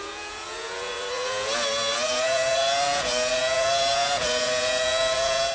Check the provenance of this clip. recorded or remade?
remade